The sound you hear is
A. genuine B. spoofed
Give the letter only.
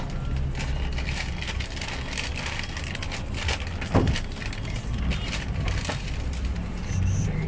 A